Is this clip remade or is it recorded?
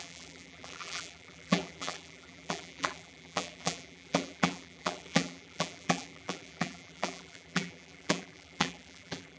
remade